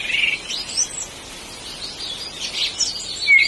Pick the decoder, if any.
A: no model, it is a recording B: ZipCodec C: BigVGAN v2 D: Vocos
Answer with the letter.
A